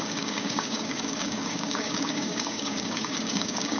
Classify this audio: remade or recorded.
remade